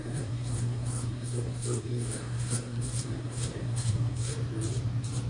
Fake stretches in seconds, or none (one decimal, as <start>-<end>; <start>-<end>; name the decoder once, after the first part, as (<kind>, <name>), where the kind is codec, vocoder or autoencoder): 0.0-4.3 (codec, SNAC)